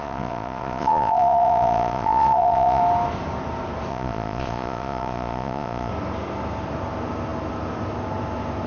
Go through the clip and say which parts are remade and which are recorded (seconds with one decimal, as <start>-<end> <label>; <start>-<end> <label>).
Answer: 0.0-2.8 remade; 2.8-3.9 recorded; 3.9-5.9 remade; 5.9-8.7 recorded